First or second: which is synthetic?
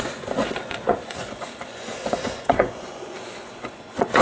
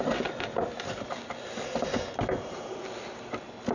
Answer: first